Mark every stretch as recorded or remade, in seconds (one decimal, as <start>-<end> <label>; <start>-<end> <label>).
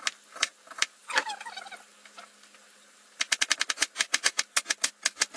0.0-5.4 recorded